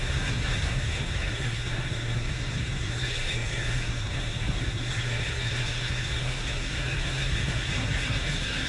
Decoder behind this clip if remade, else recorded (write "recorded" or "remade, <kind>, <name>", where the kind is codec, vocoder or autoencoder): remade, codec, SNAC